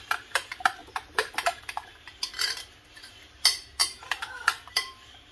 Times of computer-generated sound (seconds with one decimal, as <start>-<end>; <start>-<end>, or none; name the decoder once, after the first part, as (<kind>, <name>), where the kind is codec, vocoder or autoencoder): 0.0-0.8 (vocoder, BigVGAN v2); 2.3-5.3